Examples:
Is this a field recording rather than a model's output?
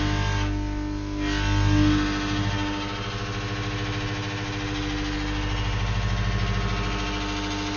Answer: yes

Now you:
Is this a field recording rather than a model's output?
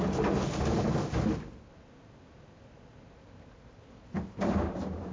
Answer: yes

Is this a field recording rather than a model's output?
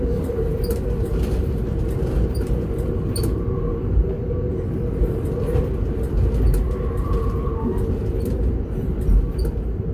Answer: yes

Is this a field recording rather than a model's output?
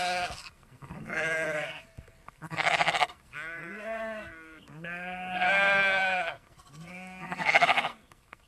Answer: no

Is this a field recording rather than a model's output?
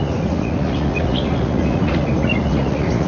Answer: no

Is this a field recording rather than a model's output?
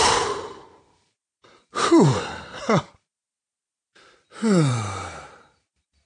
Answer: no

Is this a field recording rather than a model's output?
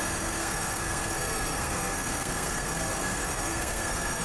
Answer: no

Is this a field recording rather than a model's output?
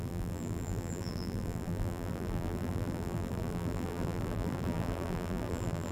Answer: no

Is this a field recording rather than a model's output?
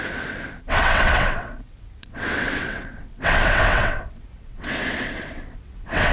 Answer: no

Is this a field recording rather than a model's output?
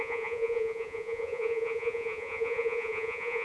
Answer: no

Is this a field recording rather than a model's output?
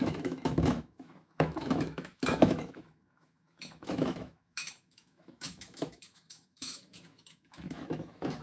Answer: no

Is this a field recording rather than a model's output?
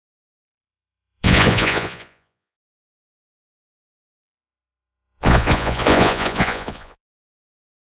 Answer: no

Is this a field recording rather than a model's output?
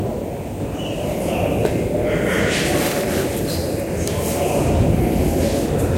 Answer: yes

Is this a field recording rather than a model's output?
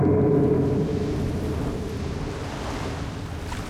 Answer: yes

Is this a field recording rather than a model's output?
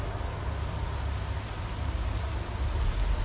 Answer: yes